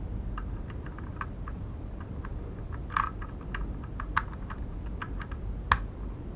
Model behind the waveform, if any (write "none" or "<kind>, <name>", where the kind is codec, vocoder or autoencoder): none